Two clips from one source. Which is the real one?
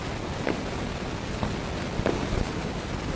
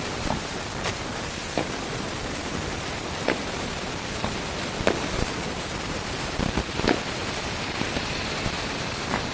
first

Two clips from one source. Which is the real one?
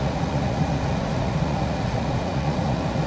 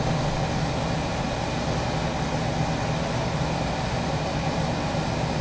second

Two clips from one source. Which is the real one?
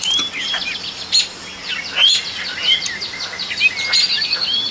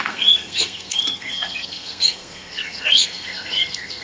first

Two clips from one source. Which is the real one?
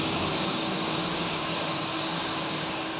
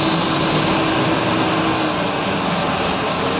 second